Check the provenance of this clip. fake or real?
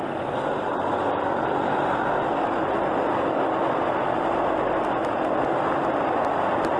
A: real